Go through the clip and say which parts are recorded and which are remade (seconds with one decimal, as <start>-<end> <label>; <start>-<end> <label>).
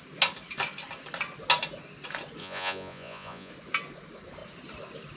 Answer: 0.0-2.4 recorded; 2.4-3.5 remade; 3.5-5.2 recorded